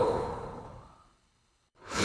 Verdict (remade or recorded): remade